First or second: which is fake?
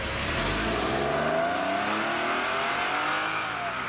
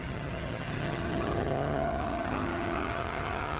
second